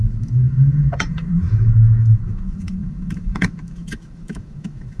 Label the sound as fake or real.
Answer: fake